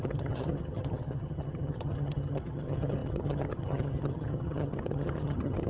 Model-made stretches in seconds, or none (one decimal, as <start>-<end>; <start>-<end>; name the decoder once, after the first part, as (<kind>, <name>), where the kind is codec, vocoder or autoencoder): 0.0-5.7 (vocoder, HiFi-GAN)